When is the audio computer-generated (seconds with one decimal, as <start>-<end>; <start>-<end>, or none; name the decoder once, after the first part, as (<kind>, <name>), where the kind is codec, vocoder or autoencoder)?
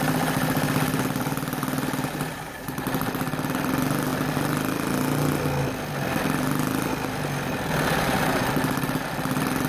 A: none